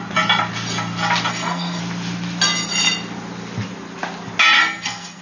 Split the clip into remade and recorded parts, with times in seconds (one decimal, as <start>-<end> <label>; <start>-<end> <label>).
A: 0.0-1.3 recorded; 1.3-1.8 remade; 1.8-4.6 recorded; 4.6-5.2 remade